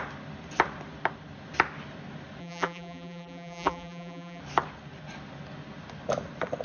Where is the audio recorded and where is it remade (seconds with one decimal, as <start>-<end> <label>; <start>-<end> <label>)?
0.0-2.4 recorded; 2.4-4.4 remade; 4.4-6.6 recorded